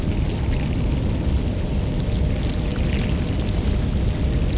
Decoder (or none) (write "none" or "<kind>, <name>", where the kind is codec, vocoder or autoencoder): none